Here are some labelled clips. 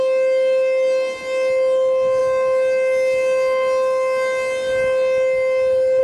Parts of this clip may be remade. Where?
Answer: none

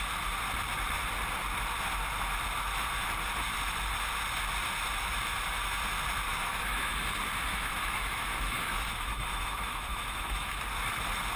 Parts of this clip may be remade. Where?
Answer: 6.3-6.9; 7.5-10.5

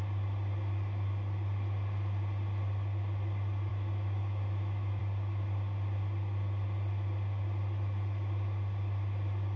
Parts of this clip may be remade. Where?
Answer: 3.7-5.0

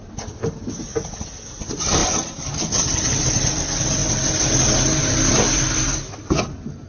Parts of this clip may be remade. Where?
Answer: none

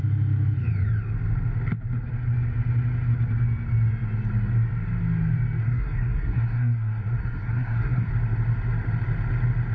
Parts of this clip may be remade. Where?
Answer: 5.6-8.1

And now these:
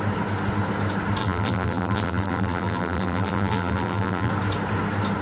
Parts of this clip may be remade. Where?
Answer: 1.2-4.3

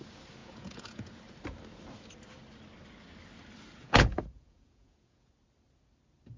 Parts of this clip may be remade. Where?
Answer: 0.4-1.1; 3.8-5.3

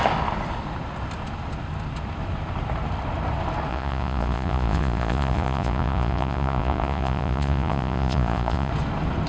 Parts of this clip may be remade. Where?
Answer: 3.7-8.7